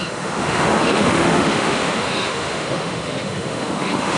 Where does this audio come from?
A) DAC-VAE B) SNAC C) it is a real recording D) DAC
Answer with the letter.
A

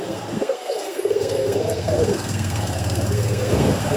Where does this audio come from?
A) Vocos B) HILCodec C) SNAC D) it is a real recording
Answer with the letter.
C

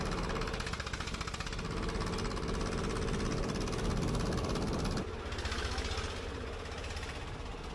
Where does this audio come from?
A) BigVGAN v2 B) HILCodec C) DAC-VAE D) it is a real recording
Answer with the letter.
D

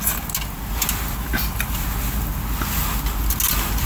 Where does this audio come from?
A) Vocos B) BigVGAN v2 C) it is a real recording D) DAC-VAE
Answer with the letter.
C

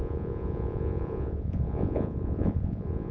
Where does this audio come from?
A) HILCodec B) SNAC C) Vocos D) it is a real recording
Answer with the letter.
C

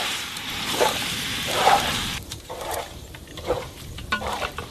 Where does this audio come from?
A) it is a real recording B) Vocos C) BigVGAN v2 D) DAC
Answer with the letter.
C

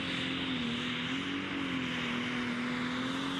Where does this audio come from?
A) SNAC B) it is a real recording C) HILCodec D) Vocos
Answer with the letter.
B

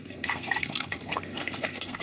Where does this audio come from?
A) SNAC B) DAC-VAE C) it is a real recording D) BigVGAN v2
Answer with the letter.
A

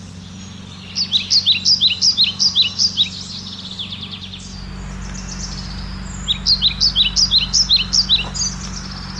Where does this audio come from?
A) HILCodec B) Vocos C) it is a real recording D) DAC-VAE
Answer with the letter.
C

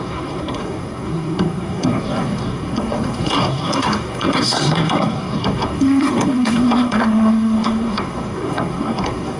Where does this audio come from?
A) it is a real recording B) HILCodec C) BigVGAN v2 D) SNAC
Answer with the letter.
D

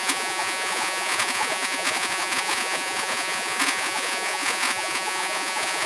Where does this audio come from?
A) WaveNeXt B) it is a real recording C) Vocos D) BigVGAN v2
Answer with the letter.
C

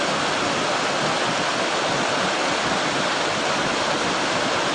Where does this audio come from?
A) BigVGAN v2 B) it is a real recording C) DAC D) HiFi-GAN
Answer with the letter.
B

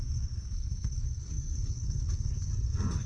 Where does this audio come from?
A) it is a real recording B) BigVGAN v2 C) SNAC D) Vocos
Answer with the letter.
C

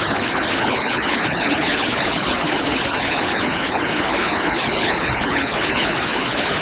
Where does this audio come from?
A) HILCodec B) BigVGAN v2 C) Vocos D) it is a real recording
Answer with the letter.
A